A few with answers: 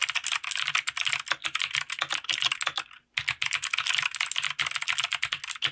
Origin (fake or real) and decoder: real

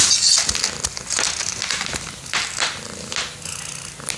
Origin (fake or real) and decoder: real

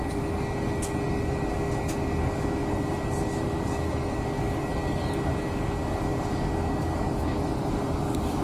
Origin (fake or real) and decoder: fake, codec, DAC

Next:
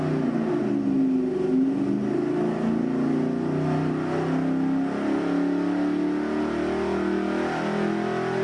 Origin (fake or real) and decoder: real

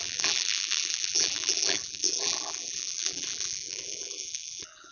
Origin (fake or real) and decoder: fake, vocoder, BigVGAN v2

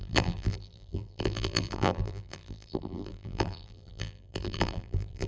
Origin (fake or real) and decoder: fake, vocoder, BigVGAN v2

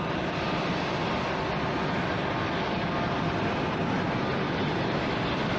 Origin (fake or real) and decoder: real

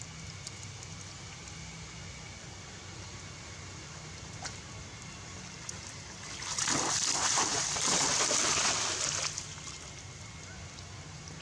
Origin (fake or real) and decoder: real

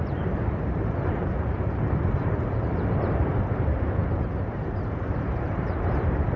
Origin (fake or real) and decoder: fake, vocoder, BigVGAN v2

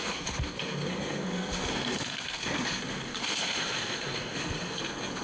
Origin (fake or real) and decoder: fake, codec, SNAC